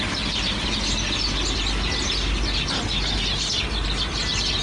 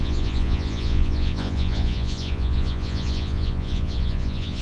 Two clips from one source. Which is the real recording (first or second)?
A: first